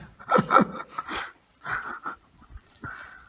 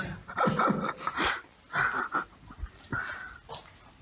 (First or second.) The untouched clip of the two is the second